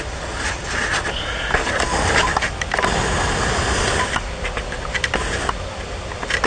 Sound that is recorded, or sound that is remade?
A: recorded